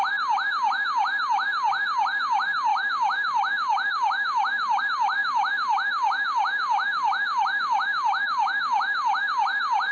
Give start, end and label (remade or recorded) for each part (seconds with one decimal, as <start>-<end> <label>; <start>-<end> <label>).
0.0-2.7 recorded; 2.7-4.8 remade; 4.8-5.2 recorded; 5.2-9.3 remade; 9.3-9.9 recorded